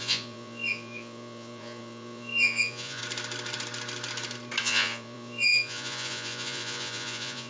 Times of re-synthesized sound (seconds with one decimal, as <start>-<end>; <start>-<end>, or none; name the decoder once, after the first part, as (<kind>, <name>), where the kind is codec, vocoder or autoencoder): 0.0-3.0 (vocoder, Vocos); 4.6-7.5